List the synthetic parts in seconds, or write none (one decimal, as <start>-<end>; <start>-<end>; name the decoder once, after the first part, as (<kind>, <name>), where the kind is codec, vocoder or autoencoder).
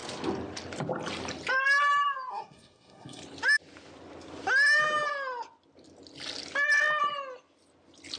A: 2.3-3.2 (codec, SNAC)